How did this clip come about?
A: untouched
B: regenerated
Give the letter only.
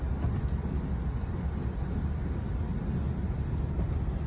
A